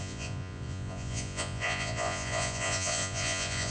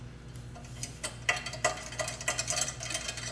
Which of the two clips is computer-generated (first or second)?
first